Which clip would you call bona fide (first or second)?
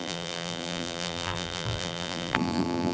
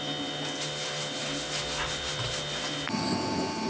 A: second